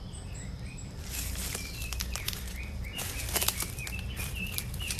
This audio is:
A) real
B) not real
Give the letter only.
B